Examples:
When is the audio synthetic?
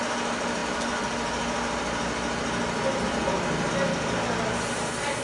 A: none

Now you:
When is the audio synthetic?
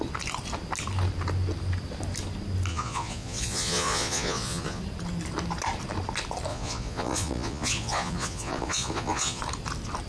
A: 2.7-4.8; 6.5-9.4